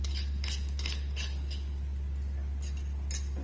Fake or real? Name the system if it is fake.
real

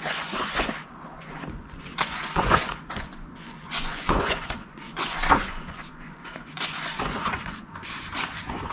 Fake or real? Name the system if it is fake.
fake, vocoder, Vocos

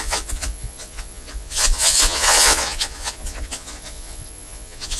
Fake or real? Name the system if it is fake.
fake, vocoder, Vocos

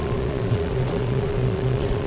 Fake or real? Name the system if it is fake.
fake, vocoder, Vocos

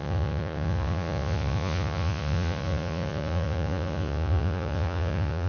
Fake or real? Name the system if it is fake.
fake, vocoder, Vocos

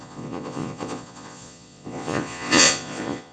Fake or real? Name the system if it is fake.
fake, vocoder, Vocos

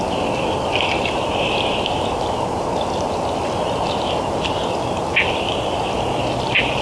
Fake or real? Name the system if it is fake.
real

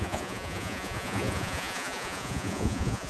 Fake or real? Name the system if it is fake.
fake, vocoder, Vocos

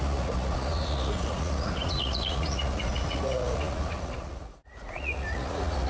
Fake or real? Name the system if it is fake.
fake, vocoder, Vocos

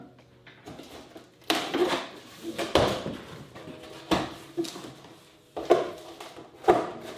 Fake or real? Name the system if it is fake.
real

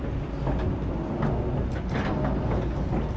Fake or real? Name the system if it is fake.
real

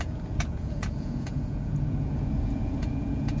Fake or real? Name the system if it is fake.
fake, vocoder, Vocos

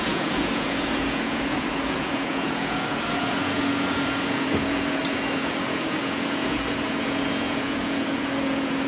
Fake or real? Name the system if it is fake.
fake, vocoder, Vocos